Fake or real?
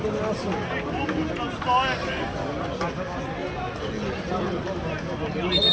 real